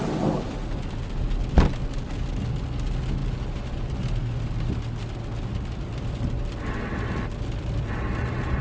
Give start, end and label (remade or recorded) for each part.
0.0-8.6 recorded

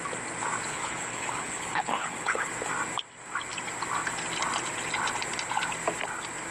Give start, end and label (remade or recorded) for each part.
0.0-0.7 recorded; 0.7-2.5 remade; 2.5-6.5 recorded

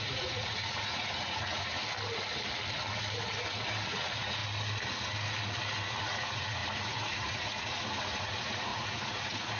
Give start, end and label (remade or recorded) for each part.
0.0-1.8 remade; 1.8-3.9 recorded; 3.9-4.4 remade; 4.4-6.0 recorded; 6.0-9.6 remade

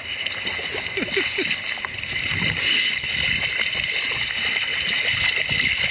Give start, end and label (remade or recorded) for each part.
0.0-5.9 recorded

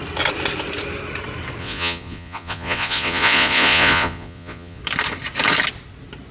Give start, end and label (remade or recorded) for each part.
0.0-1.6 recorded; 1.6-4.8 remade; 4.8-6.3 recorded

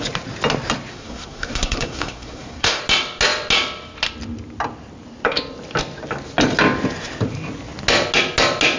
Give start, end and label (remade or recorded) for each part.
0.0-0.9 recorded; 0.9-2.8 remade; 2.8-8.8 recorded

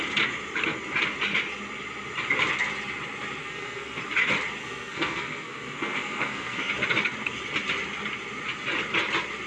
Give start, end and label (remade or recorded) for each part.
0.0-3.4 recorded; 3.4-4.0 remade; 4.0-4.6 recorded; 4.6-6.7 remade; 6.7-9.5 recorded